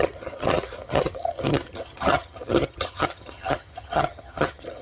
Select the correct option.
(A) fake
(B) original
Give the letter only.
A